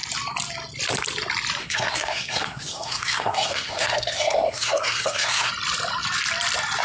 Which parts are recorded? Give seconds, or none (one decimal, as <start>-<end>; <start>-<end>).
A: 0.0-1.6; 5.5-6.8